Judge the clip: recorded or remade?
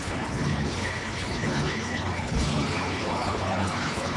remade